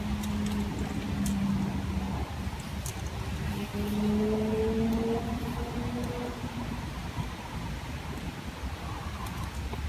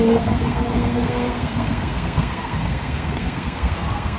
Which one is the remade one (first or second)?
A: second